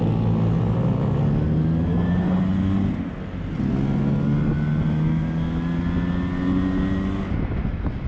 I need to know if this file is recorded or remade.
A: recorded